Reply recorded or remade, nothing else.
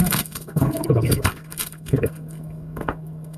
remade